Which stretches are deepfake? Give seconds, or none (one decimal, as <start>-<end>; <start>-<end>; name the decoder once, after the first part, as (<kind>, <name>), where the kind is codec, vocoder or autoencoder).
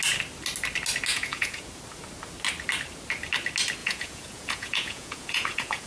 1.1-1.6 (vocoder, Vocos); 3.8-5.9